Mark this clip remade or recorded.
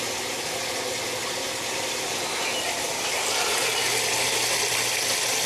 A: recorded